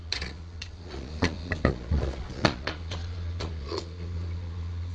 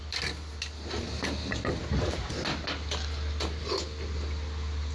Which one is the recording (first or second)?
second